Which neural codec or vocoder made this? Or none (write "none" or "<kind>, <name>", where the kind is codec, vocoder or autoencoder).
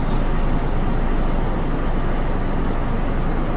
none